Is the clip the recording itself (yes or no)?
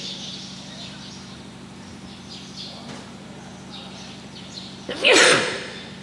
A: yes